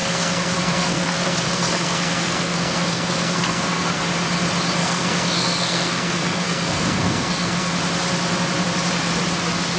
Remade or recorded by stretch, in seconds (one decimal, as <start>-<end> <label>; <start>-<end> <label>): 0.0-4.0 remade; 4.0-4.8 recorded; 4.8-7.7 remade; 7.7-9.8 recorded